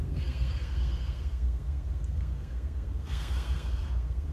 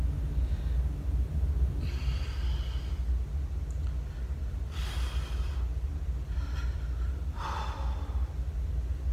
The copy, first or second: first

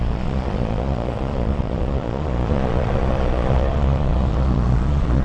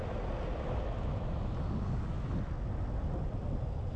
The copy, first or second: first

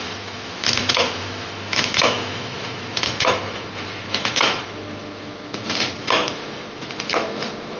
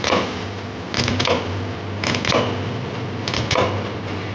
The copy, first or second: first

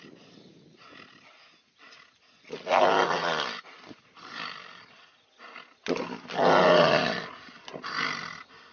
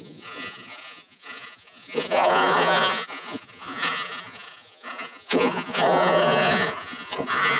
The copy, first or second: second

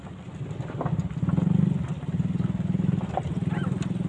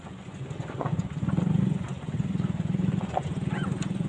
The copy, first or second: second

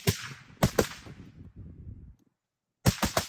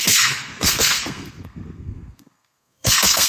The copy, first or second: second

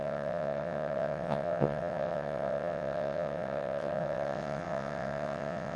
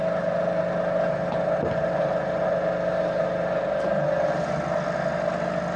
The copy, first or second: first